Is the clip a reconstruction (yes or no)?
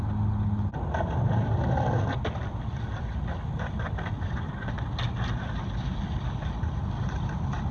no